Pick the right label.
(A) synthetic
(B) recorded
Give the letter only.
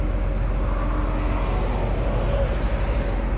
B